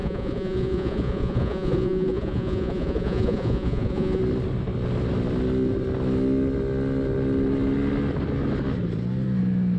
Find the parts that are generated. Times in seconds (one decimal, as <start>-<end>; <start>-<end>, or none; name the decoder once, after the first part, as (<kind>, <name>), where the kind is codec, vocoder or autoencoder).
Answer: 0.0-4.2 (vocoder, Vocos)